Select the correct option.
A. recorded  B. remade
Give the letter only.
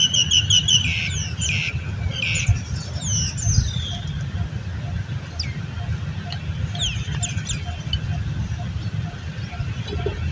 A